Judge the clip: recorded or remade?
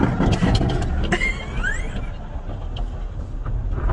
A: recorded